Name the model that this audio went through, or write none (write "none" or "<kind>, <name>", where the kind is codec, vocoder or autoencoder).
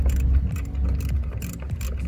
none